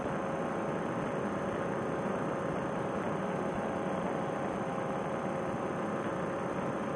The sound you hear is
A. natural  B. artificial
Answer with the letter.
A